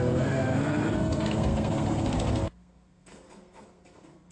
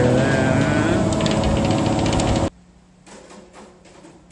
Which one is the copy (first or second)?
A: first